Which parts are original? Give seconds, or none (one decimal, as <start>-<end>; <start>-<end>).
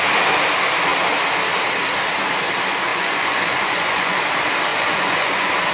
0.0-2.9; 4.2-4.7